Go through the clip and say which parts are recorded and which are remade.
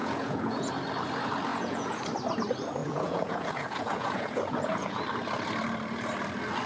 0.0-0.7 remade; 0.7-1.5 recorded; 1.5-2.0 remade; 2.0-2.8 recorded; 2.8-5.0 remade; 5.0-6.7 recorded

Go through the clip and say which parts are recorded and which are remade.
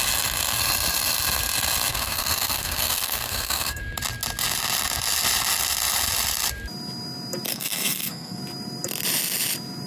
0.0-1.9 recorded; 1.9-3.8 remade; 3.8-7.5 recorded; 7.5-8.4 remade; 8.4-9.9 recorded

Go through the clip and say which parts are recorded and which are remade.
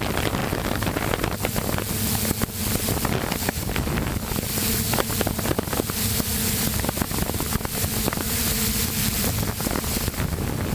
0.0-0.4 remade; 0.4-3.2 recorded; 3.2-10.7 remade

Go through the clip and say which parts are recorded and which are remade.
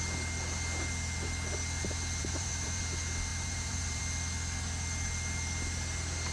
0.0-2.2 recorded; 2.2-2.8 remade; 2.8-3.3 recorded; 3.3-4.0 remade; 4.0-6.3 recorded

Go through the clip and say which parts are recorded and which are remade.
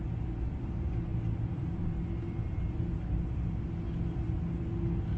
0.0-5.2 recorded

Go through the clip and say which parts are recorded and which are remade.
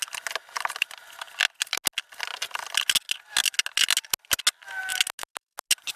0.0-6.0 recorded